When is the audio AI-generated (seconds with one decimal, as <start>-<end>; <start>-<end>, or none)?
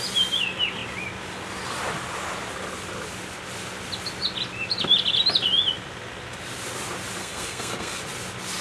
7.2-8.0